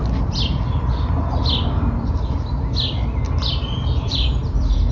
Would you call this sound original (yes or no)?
yes